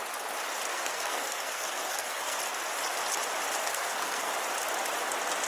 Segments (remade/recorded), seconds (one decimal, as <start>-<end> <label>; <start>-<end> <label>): 0.0-0.7 recorded; 0.7-2.4 remade; 2.4-3.6 recorded; 3.6-4.3 remade; 4.3-5.5 recorded